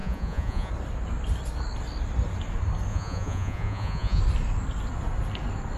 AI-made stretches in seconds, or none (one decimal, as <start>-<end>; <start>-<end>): 0.0-0.7; 2.9-4.2